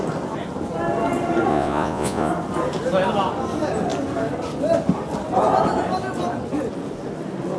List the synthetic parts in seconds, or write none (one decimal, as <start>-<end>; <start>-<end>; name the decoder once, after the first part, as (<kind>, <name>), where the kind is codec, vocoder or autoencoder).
1.5-2.3 (vocoder, Vocos)